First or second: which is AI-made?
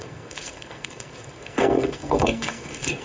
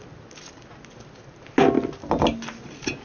first